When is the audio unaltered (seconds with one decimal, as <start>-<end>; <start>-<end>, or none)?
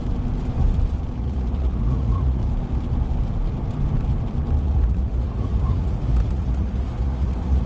0.0-1.2; 2.4-4.6